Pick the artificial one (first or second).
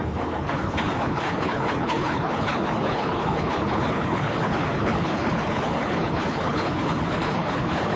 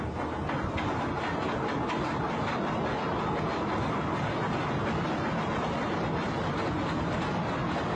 first